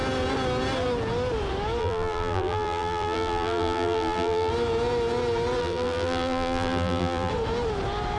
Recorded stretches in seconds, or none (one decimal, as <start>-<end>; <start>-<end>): 0.0-1.8; 4.5-5.6; 7.3-8.2